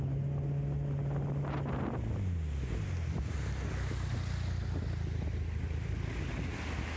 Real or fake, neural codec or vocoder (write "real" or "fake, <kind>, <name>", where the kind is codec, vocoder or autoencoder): real